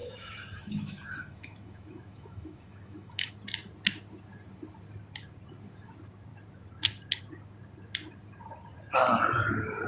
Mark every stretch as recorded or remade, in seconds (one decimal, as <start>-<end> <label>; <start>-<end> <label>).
0.0-3.3 remade; 3.3-9.9 recorded